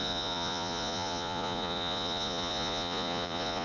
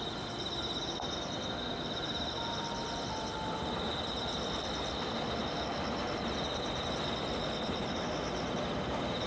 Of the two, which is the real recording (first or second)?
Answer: second